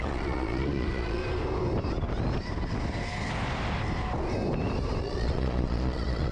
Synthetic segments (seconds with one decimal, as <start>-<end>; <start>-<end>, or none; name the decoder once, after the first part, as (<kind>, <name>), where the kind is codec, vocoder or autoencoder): 0.0-1.2 (vocoder, Vocos); 5.0-6.3